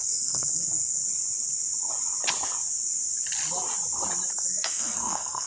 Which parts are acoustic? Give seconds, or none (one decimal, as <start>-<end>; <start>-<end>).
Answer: 1.0-4.3